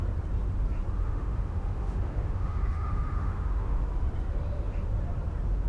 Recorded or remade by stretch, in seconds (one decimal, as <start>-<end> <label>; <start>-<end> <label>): 0.0-1.0 recorded; 1.0-3.8 remade; 3.8-5.7 recorded